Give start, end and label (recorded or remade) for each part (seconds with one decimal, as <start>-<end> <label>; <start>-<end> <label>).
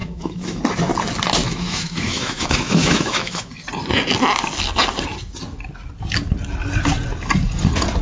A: 0.0-0.6 remade; 0.6-1.4 recorded; 1.4-3.5 remade; 3.5-8.0 recorded